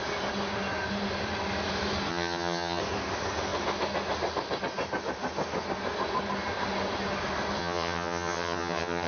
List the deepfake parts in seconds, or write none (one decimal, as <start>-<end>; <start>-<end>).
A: 2.1-2.8; 7.6-9.1